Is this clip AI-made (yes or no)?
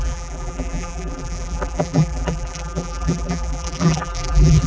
yes